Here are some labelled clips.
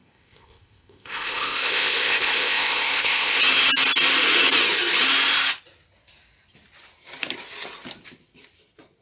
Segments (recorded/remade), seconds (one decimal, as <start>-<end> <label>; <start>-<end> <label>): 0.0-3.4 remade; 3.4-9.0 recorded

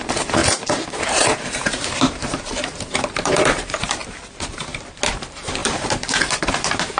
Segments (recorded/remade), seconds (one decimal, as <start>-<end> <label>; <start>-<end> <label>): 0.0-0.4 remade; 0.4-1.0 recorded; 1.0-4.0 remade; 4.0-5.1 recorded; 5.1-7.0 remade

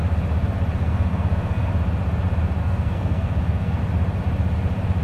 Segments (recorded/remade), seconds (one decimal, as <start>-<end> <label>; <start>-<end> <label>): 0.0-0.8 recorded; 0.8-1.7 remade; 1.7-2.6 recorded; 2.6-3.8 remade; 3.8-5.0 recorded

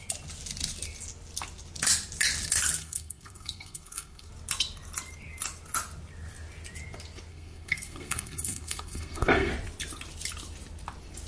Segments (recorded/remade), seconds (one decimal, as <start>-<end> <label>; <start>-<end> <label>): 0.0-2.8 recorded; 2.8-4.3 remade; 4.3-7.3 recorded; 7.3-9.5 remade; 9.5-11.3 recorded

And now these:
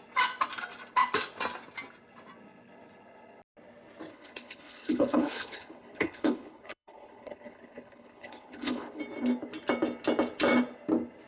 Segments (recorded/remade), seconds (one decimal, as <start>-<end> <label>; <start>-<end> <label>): 0.0-4.1 recorded; 4.1-9.0 remade; 9.0-11.3 recorded

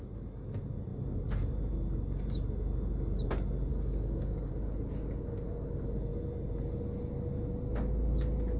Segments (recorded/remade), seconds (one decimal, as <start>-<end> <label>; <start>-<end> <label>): 0.0-3.7 recorded; 3.7-4.5 remade; 4.5-8.6 recorded

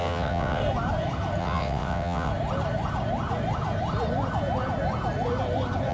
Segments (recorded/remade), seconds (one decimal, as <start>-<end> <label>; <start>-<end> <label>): 0.0-0.6 remade; 0.6-1.4 recorded; 1.4-2.3 remade; 2.3-5.9 recorded

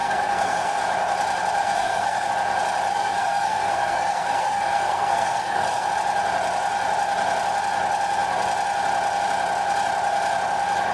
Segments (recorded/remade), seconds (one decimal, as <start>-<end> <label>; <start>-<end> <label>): 0.0-0.8 remade; 0.8-1.6 recorded; 1.6-2.3 remade; 2.3-2.9 recorded; 2.9-5.9 remade; 5.9-10.9 recorded